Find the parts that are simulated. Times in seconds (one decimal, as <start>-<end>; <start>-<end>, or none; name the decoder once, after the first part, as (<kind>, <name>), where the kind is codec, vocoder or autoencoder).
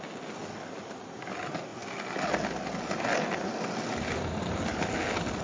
none